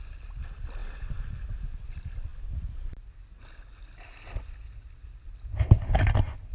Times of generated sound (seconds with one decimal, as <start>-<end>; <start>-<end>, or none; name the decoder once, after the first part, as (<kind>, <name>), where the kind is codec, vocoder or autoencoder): none